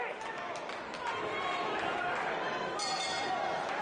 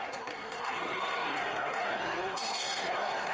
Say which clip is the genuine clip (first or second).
first